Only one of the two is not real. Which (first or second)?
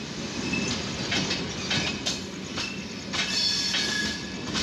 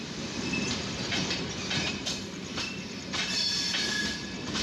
second